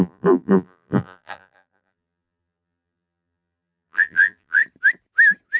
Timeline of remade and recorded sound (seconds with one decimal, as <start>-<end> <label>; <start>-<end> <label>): 0.0-4.6 remade; 4.6-5.6 recorded